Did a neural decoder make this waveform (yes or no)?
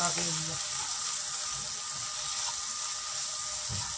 no